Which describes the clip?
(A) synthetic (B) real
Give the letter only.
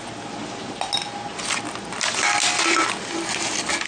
B